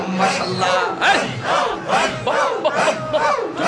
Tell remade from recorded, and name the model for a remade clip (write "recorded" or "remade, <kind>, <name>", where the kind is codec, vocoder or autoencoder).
recorded